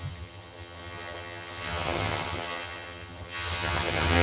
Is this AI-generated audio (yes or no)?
yes